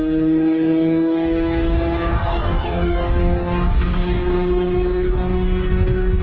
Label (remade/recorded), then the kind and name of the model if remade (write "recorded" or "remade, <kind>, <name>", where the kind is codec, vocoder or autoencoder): remade, codec, DAC